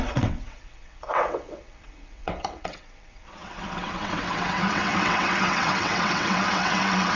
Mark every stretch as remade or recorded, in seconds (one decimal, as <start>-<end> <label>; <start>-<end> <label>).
0.0-7.2 remade